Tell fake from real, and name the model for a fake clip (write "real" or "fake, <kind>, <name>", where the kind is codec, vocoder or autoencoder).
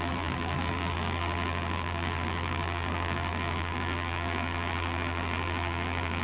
fake, vocoder, BigVGAN v2